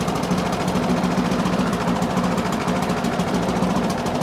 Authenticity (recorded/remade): recorded